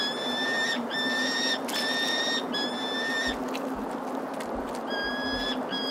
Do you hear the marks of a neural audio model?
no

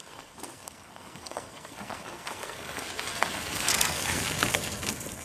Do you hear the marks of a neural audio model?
yes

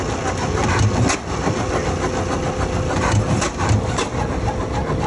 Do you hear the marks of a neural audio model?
no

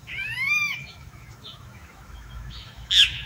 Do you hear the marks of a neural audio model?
yes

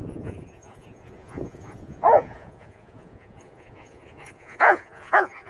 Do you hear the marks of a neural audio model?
yes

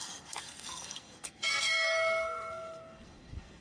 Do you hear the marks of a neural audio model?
yes